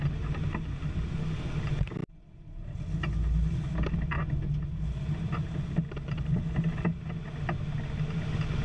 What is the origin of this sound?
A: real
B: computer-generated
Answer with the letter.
A